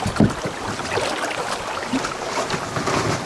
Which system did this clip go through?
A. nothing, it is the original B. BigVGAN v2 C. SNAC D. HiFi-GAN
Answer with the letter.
A